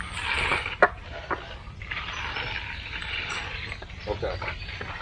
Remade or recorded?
remade